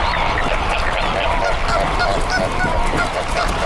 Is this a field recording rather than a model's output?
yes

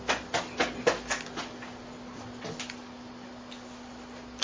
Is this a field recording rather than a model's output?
yes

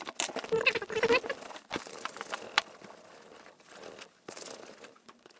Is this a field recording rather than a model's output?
no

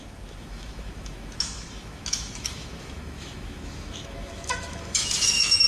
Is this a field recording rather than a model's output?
no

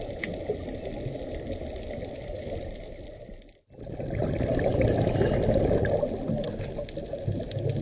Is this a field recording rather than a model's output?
yes